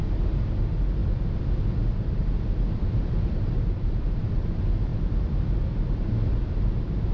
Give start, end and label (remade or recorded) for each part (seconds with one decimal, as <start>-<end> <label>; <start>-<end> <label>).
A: 0.0-7.1 recorded